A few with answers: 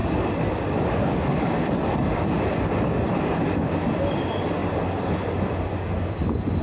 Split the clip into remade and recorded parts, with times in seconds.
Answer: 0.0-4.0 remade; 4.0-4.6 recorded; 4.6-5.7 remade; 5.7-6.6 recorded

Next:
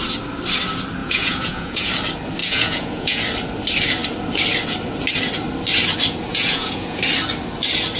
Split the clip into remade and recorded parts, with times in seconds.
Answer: 0.0-1.0 recorded; 1.0-1.9 remade; 1.9-2.4 recorded; 2.4-3.2 remade; 3.2-6.3 recorded; 6.3-7.0 remade; 7.0-8.0 recorded

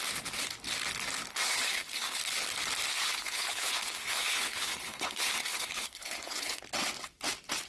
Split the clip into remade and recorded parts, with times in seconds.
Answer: 0.0-1.3 recorded; 1.3-2.2 remade; 2.2-2.9 recorded; 2.9-6.6 remade; 6.6-7.7 recorded

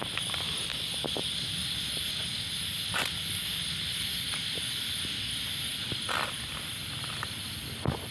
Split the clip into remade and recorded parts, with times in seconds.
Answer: 0.0-8.1 recorded

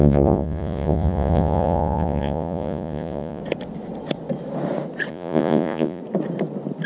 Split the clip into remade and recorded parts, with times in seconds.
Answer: 0.0-3.4 remade; 3.4-5.1 recorded; 5.1-6.0 remade; 6.0-6.9 recorded

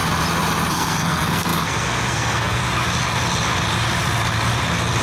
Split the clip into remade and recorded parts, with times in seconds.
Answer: 0.0-0.7 recorded; 0.7-2.6 remade; 2.6-5.0 recorded